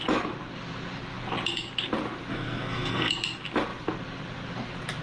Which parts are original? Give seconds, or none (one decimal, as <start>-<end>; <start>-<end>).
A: 0.0-2.3; 3.1-5.0